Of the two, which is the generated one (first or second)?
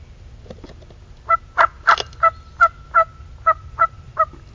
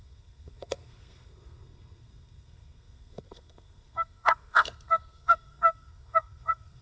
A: second